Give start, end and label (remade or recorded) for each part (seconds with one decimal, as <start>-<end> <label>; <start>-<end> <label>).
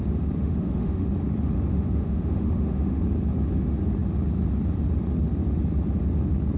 0.0-0.4 recorded; 0.4-1.1 remade; 1.1-1.7 recorded; 1.7-3.0 remade; 3.0-6.6 recorded